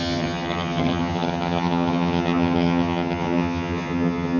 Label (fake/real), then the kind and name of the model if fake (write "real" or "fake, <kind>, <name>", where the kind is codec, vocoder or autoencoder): fake, vocoder, HiFi-GAN